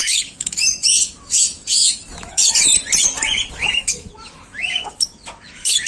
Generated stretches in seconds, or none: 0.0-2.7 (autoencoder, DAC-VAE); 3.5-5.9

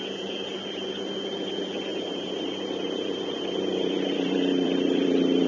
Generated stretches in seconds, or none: 1.9-5.5 (vocoder, BigVGAN v2)